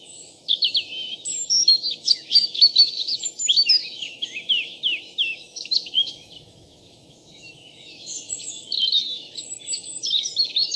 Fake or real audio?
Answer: fake